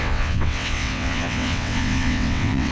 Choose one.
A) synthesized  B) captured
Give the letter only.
A